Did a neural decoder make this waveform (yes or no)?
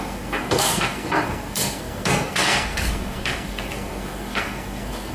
yes